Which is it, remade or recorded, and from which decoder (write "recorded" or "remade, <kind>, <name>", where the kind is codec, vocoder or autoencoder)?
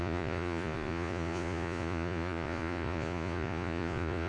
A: remade, vocoder, Vocos